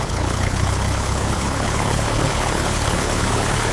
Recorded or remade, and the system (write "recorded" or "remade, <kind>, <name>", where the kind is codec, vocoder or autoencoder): remade, codec, HILCodec